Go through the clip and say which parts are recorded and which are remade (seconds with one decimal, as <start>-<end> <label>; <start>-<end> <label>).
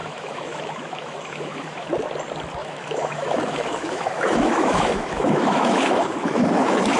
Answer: 0.0-1.9 remade; 1.9-2.6 recorded; 2.6-7.0 remade